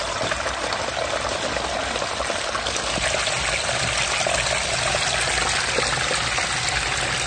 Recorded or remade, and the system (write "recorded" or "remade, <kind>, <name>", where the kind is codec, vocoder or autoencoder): recorded